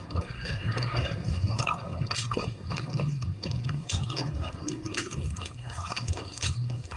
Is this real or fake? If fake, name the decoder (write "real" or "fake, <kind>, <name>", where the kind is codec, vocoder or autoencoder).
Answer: fake, codec, SNAC